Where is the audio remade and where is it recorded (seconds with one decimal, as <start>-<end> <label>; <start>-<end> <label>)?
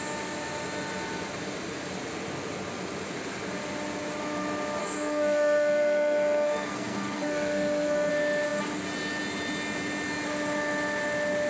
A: 0.0-4.8 recorded; 4.8-8.1 remade; 8.1-11.5 recorded